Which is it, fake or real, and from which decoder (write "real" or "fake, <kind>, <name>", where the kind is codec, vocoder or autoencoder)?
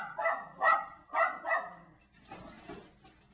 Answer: real